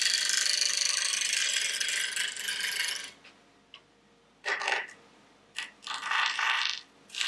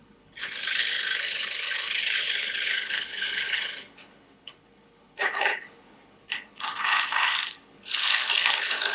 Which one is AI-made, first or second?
second